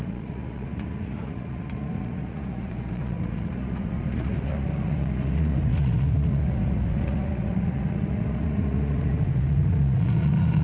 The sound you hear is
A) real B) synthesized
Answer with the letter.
B